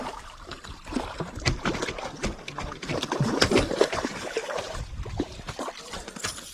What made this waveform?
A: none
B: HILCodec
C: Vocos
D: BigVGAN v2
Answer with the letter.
D